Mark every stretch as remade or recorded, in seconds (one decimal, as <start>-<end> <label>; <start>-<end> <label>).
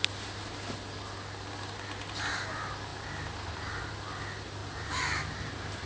0.0-4.6 recorded; 4.6-5.5 remade; 5.5-5.9 recorded